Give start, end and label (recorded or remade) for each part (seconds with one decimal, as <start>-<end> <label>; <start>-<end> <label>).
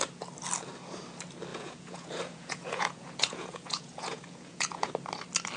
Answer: 0.0-1.5 recorded; 1.5-4.9 remade; 4.9-5.6 recorded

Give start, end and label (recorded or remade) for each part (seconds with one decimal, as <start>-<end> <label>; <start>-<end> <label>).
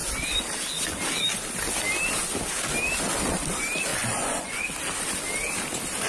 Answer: 0.0-3.9 recorded; 3.9-4.6 remade; 4.6-6.1 recorded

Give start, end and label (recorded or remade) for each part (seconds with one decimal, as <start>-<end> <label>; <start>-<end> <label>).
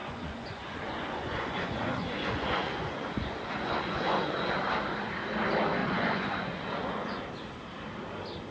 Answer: 0.0-4.5 remade; 4.5-5.8 recorded; 5.8-7.2 remade; 7.2-8.5 recorded